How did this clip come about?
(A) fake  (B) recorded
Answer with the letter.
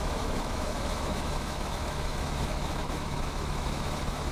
A